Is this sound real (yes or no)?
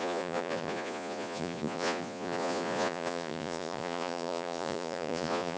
no